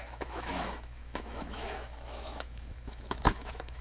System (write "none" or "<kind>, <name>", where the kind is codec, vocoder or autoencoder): autoencoder, DAC-VAE